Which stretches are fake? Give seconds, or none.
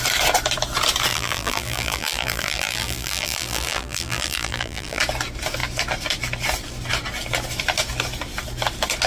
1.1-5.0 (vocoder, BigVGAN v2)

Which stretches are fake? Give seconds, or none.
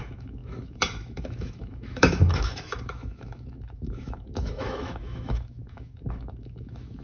0.0-7.0 (autoencoder, DAC-VAE)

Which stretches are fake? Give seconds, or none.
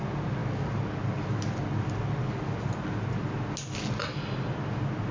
none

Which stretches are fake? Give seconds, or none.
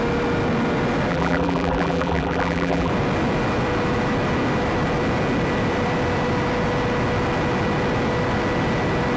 1.1-2.9 (vocoder, BigVGAN v2)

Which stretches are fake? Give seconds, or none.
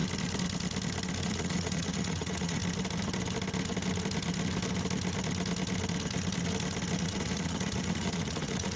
1.2-2.6 (vocoder, Vocos); 7.0-8.8